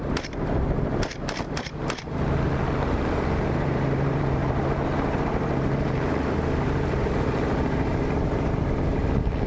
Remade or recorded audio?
remade